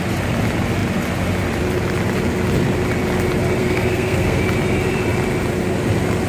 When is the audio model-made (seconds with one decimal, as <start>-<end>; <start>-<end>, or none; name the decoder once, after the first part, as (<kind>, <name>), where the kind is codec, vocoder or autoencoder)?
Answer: 3.6-4.4 (codec, SNAC)